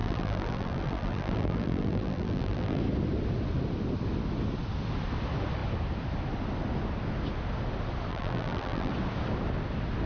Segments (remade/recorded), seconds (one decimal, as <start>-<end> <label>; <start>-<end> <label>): 0.0-2.8 remade; 2.8-8.1 recorded; 8.1-8.9 remade; 8.9-10.1 recorded